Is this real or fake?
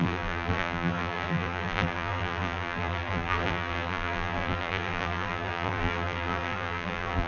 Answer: fake